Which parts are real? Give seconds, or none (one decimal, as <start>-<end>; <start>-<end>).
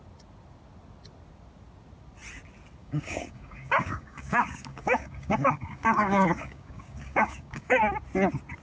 0.0-2.8; 7.8-8.6